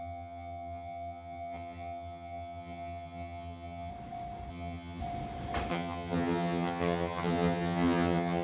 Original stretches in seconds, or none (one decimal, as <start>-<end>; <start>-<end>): 3.9-4.5; 5.0-5.7